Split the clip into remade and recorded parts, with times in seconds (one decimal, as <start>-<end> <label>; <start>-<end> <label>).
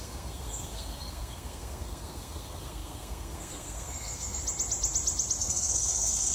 0.0-4.4 remade; 4.4-5.4 recorded; 5.4-6.3 remade